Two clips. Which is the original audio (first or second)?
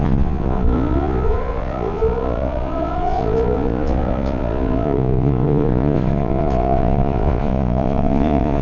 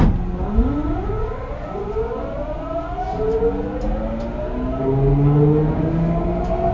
second